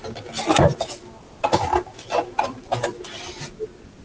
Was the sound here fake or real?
real